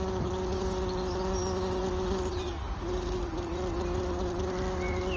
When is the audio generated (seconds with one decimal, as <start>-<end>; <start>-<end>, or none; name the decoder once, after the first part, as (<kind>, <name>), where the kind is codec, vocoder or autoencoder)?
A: none